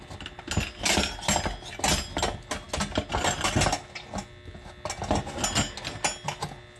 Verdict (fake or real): real